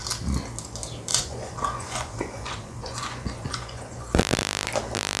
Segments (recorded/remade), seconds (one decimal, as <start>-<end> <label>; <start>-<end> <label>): 0.0-1.1 recorded; 1.1-4.2 remade; 4.2-5.2 recorded